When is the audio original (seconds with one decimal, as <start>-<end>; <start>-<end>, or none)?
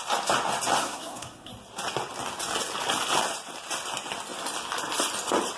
0.0-0.8; 1.5-5.6